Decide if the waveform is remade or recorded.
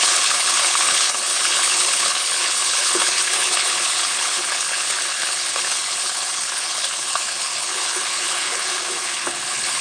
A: remade